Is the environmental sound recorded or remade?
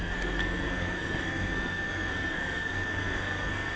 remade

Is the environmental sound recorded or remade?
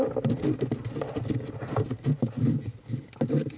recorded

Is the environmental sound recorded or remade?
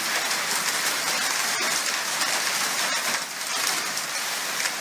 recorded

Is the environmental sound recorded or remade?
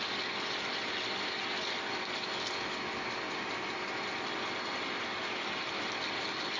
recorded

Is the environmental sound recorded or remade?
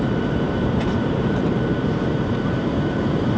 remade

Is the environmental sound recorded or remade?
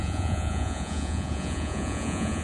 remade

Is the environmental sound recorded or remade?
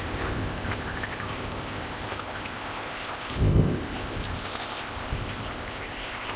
remade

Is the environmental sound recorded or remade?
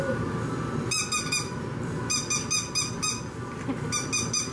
recorded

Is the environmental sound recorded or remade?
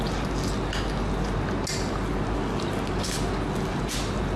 recorded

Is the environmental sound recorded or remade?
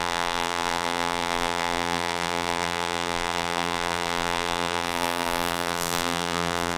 remade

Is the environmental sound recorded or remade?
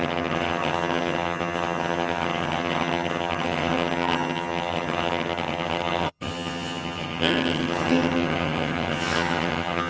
remade